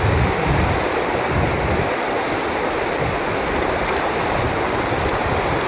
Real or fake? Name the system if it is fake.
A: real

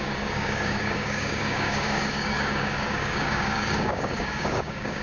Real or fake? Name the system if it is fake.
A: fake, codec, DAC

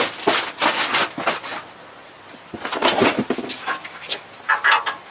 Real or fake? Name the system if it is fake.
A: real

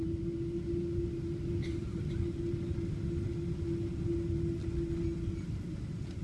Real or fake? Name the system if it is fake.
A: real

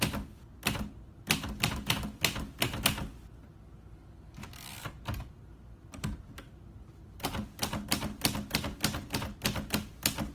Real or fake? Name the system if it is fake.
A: real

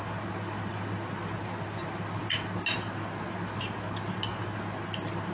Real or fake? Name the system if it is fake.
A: real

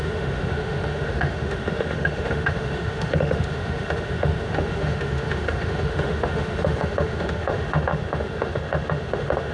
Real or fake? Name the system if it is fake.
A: fake, autoencoder, DAC-VAE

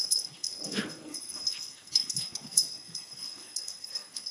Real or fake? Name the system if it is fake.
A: fake, codec, SNAC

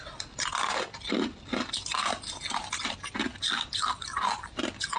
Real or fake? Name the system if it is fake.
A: real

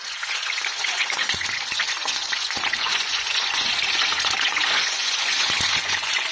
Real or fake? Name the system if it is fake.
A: fake, vocoder, Vocos